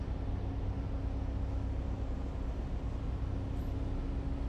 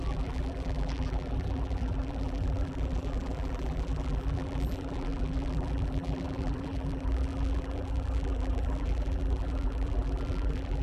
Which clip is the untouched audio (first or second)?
first